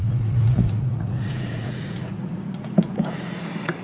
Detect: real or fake fake